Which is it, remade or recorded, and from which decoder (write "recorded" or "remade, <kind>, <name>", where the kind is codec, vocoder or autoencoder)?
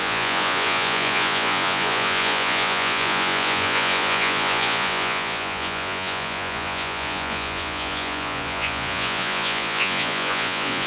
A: remade, vocoder, Vocos